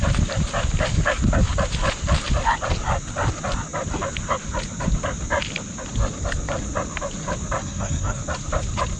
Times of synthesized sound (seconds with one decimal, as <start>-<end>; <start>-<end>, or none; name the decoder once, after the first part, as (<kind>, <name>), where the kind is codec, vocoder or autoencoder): 7.6-8.2 (codec, SNAC)